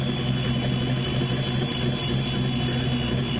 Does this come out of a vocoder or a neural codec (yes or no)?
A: no